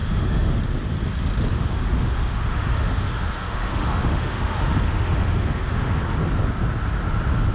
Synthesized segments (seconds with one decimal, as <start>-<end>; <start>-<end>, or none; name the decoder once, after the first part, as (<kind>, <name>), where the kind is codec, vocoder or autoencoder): 0.0-0.6 (autoencoder, DAC-VAE); 1.5-6.0